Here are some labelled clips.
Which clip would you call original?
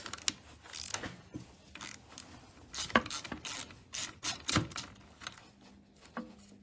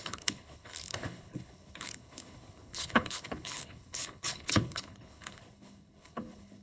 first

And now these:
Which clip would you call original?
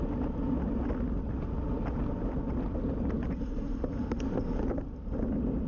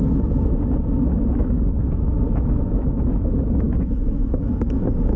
first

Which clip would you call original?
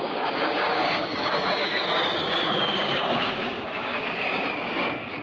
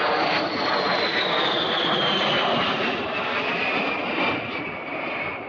second